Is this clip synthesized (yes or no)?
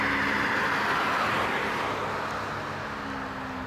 no